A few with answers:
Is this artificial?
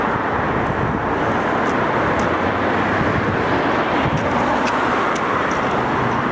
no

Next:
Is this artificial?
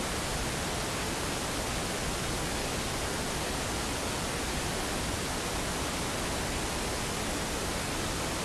no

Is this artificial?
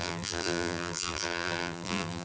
yes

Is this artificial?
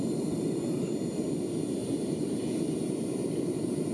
no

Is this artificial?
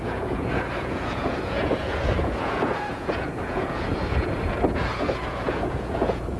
yes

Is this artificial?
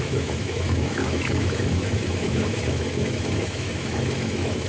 yes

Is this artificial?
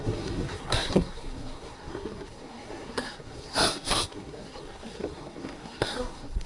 yes